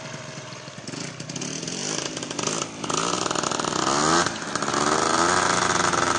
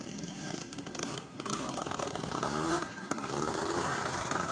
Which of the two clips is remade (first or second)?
second